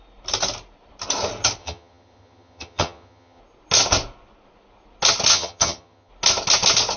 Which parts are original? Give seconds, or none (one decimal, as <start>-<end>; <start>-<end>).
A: 0.0-1.6; 3.4-5.3; 6.1-7.0